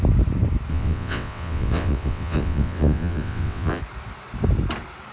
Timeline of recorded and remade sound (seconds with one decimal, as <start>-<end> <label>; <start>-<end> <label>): 0.0-0.7 recorded; 0.7-3.8 remade; 3.8-5.1 recorded